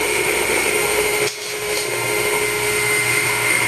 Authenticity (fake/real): fake